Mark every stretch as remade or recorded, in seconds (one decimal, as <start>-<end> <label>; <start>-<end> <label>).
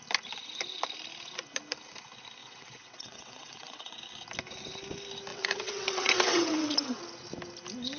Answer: 0.0-2.4 recorded; 2.4-4.0 remade; 4.0-5.3 recorded; 5.3-7.0 remade; 7.0-8.0 recorded